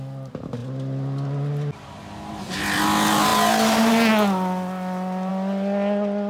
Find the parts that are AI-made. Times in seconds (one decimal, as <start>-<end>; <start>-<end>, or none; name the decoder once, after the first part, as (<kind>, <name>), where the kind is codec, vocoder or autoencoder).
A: none